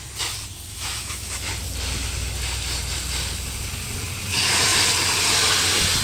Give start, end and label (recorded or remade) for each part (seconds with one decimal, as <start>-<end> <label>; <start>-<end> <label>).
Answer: 0.0-0.7 recorded; 0.7-1.5 remade; 1.5-6.0 recorded